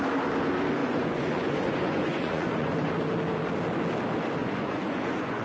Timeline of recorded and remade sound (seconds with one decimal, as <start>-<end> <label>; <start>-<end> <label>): 0.0-0.8 recorded; 0.8-2.9 remade; 2.9-4.4 recorded; 4.4-5.4 remade